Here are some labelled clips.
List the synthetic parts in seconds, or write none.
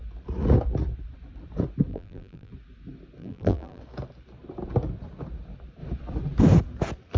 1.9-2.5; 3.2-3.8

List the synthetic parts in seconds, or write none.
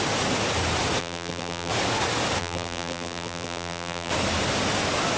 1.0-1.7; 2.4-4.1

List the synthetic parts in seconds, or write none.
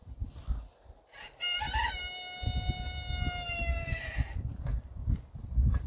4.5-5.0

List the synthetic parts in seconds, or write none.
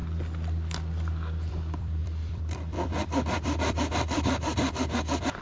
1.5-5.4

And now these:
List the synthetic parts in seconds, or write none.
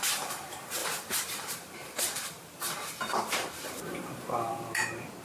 0.0-5.2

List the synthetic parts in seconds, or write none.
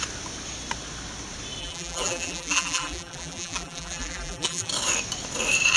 1.6-4.7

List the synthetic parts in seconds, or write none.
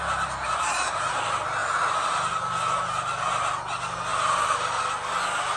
4.1-4.8